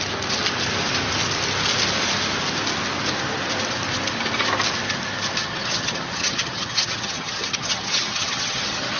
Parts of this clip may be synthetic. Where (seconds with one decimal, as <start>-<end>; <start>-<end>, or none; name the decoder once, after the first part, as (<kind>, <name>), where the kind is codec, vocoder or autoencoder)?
5.4-9.0 (vocoder, HiFi-GAN)